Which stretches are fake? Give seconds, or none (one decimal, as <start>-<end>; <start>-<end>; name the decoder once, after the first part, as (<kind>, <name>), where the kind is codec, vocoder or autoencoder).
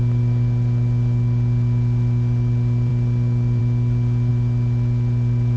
none